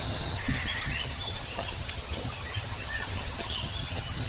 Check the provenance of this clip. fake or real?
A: fake